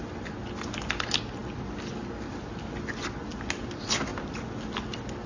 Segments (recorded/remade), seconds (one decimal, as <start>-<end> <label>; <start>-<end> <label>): 0.0-5.3 recorded